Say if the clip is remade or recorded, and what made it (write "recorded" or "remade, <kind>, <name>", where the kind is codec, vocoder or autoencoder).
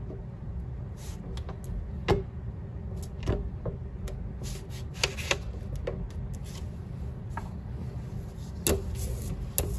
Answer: recorded